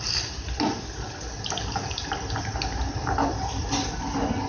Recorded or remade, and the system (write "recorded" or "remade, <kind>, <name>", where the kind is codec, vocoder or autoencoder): recorded